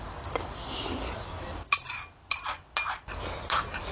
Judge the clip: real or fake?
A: real